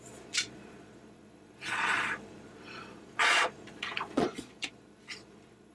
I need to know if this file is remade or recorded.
remade